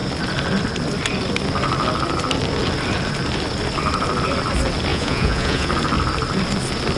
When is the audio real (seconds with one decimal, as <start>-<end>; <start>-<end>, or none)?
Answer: 0.0-4.9; 5.7-7.0